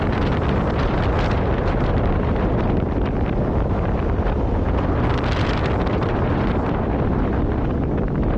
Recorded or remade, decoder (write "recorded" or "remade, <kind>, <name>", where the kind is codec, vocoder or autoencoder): remade, vocoder, BigVGAN v2